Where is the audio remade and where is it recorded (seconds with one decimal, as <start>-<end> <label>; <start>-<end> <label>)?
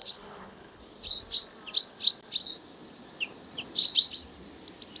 0.0-0.8 remade; 0.8-5.0 recorded